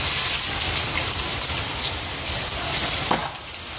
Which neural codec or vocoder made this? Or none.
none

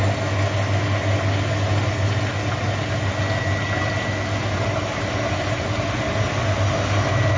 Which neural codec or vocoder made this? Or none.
none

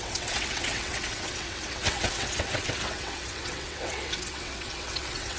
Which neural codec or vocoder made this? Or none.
vocoder, WaveNeXt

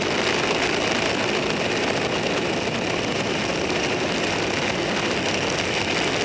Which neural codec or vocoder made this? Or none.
none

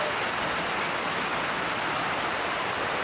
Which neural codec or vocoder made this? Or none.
none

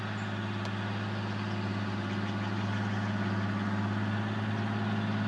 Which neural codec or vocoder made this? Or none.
none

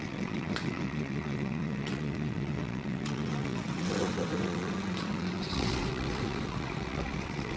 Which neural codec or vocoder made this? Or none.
vocoder, WaveNeXt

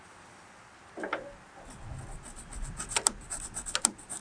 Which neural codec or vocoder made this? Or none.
none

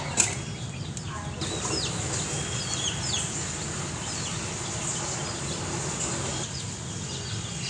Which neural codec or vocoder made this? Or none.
none